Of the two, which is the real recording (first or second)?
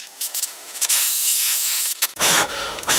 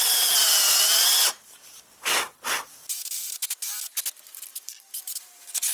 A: second